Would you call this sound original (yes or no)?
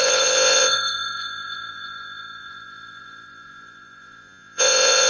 no